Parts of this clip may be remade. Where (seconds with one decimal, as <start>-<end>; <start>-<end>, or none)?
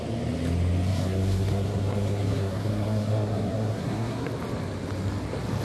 0.9-4.3